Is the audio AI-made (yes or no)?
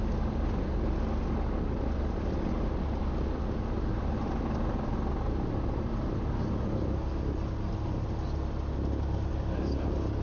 no